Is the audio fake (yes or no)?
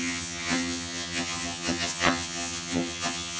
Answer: yes